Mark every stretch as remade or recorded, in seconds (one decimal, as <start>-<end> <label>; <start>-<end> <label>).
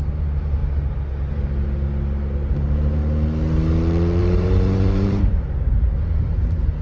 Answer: 0.0-0.6 remade; 0.6-2.5 recorded; 2.5-3.0 remade; 3.0-4.2 recorded; 4.2-6.8 remade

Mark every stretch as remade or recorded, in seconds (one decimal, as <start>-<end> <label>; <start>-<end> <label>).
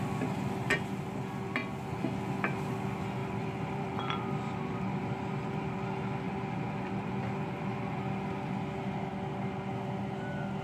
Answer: 0.0-3.2 recorded; 3.2-8.0 remade; 8.0-10.6 recorded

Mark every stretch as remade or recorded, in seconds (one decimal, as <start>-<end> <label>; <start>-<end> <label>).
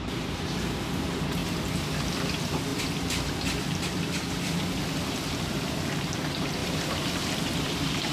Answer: 0.0-1.4 recorded; 1.4-1.9 remade; 1.9-2.7 recorded; 2.7-5.9 remade; 5.9-6.6 recorded; 6.6-8.1 remade